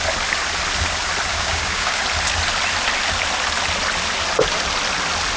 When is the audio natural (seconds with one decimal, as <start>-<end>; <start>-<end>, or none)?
0.0-1.3; 2.0-5.4